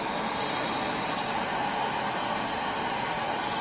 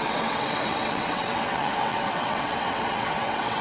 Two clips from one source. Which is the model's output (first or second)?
second